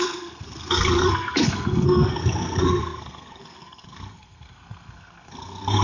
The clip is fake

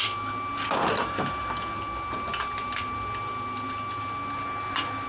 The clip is real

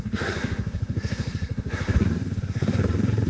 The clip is fake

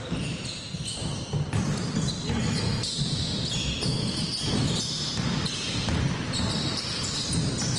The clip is real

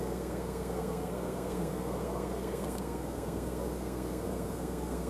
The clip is fake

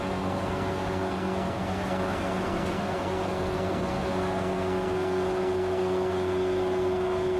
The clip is fake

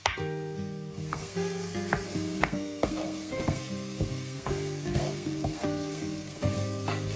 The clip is fake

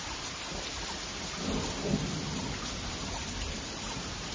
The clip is real